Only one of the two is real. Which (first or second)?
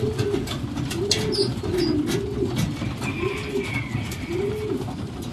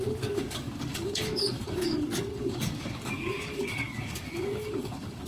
first